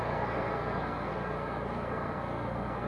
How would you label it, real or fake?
fake